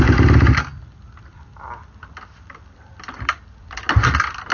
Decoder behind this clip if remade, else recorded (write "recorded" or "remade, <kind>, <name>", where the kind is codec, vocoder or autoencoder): recorded